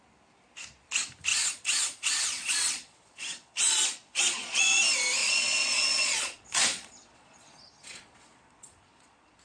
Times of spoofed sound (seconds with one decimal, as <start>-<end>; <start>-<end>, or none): 1.3-4.8; 5.2-9.4